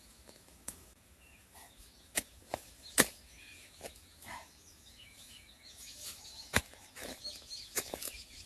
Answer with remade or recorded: remade